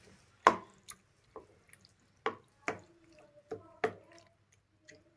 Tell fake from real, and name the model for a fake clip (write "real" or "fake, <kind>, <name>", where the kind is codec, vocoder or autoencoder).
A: real